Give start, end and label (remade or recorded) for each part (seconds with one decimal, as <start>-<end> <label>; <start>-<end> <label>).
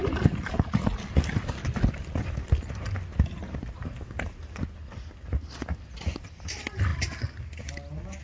0.0-8.2 recorded